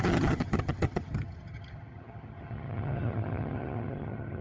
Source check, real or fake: fake